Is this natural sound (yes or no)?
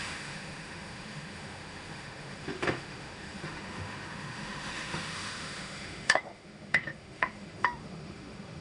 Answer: no